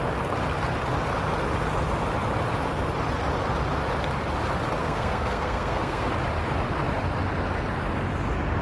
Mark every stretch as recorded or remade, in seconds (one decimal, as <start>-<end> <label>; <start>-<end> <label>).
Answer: 0.0-4.8 recorded; 4.8-6.1 remade; 6.1-8.6 recorded